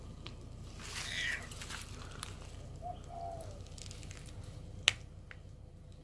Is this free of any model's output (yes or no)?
yes